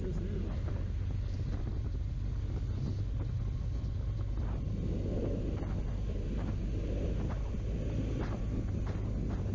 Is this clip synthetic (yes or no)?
no